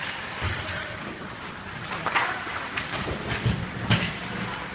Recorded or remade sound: remade